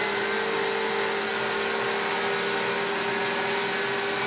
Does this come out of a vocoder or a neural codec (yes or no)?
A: no